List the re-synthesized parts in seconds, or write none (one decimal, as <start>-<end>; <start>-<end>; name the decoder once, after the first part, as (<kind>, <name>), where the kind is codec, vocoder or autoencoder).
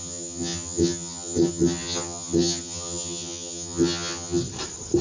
0.0-4.4 (vocoder, HiFi-GAN)